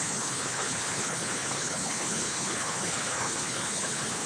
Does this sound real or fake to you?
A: fake